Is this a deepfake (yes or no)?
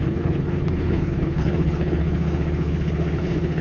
yes